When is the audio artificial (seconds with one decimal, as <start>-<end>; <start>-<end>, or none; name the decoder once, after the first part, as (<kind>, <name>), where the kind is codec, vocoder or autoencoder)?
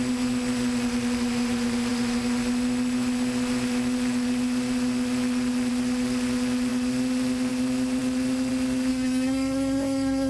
8.9-10.3 (codec, SNAC)